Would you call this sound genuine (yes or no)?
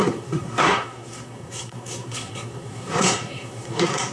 no